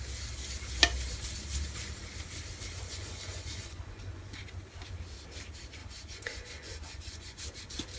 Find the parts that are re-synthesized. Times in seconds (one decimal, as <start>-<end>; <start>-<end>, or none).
2.9-4.4; 5.8-7.4